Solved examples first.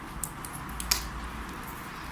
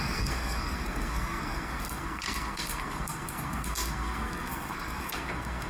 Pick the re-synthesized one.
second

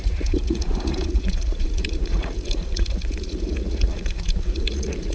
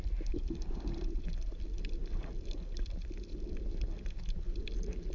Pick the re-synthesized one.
first